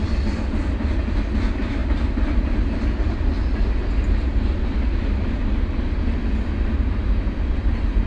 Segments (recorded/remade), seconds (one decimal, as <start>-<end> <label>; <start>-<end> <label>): 0.0-8.1 recorded